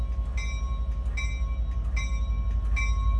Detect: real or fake real